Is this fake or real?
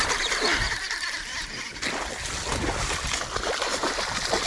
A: real